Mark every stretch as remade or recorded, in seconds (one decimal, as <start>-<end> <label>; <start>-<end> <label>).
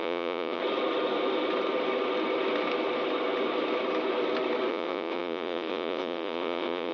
0.0-0.6 remade; 0.6-4.7 recorded; 4.7-6.9 remade